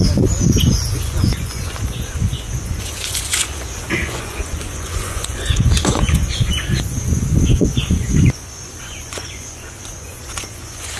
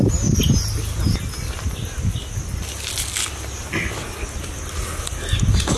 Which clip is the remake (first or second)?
first